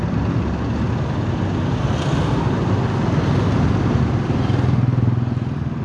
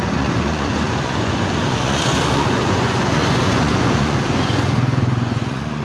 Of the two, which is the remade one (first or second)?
second